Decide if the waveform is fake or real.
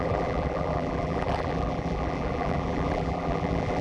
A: fake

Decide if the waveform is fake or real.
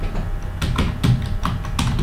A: real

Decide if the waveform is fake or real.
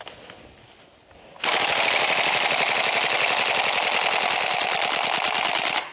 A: real